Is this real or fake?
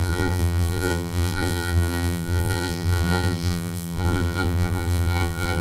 fake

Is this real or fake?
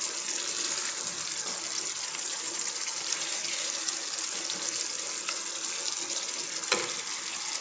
real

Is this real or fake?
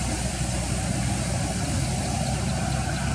fake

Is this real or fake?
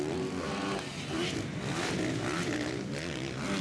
real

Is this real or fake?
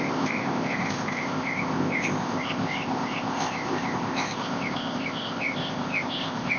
fake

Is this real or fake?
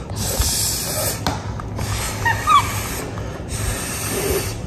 real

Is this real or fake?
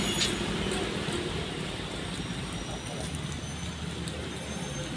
real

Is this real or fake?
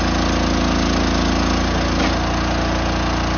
real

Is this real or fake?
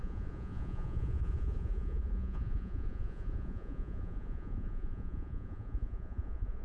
fake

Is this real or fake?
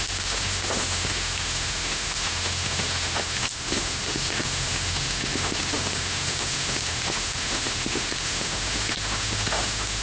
fake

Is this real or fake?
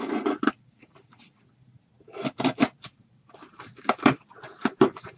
real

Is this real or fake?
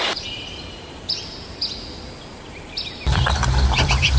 fake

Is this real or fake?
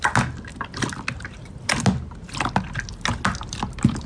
real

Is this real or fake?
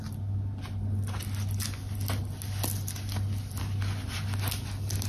real